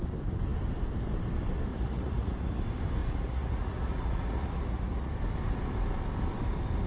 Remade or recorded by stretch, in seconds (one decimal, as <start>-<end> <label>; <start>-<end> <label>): 0.0-1.7 recorded; 1.7-2.6 remade; 2.6-3.0 recorded; 3.0-5.1 remade; 5.1-6.9 recorded